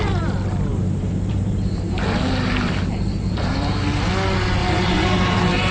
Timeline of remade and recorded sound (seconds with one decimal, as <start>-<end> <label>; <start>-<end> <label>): 0.0-0.7 recorded; 0.7-4.1 remade; 4.1-4.6 recorded; 4.6-5.7 remade